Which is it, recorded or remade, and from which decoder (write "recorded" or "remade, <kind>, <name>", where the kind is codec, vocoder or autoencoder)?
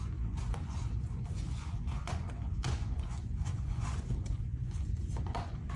remade, vocoder, Vocos